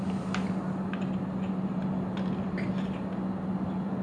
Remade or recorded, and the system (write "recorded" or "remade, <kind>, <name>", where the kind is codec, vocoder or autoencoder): recorded